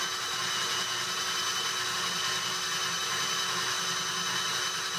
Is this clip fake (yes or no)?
no